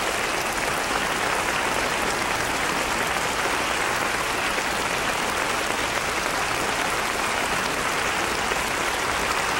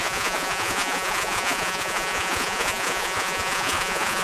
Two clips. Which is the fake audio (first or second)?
second